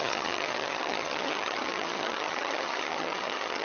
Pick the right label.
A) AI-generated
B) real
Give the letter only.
A